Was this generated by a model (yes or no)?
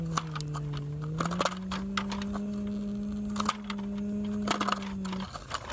no